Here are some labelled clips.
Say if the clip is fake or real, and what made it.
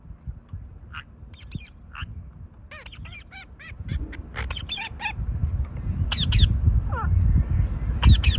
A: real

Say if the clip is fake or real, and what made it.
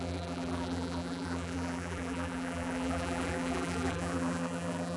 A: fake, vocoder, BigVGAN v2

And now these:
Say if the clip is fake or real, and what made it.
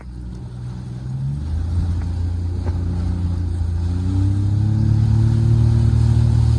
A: real